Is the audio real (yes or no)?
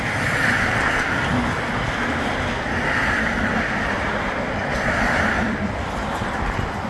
no